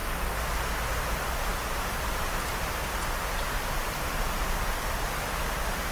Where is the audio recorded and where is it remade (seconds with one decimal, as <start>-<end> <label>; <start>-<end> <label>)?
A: 0.0-5.9 recorded